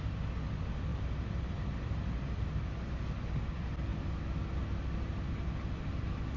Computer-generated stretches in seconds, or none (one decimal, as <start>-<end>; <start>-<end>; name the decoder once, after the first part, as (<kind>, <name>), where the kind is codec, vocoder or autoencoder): 0.9-2.7 (vocoder, BigVGAN v2)